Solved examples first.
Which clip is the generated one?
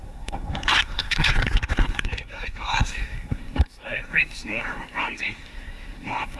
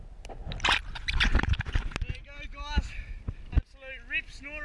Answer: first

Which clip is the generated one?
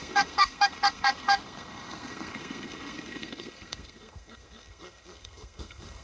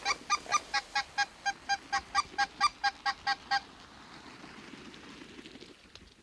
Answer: first